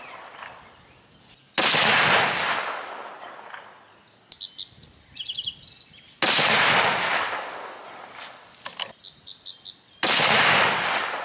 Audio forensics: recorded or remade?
recorded